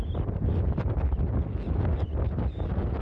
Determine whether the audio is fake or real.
real